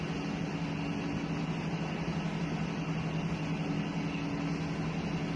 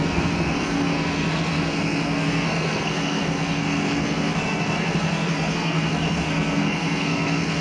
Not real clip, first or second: second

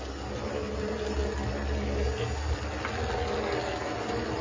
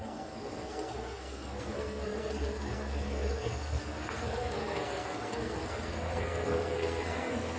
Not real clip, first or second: second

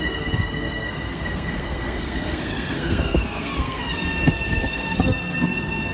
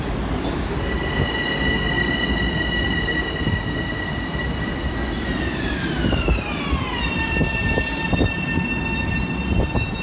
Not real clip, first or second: first